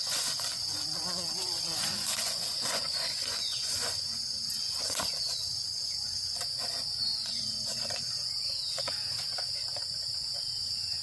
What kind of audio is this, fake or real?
fake